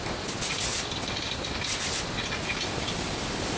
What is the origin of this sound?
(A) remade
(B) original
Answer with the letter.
B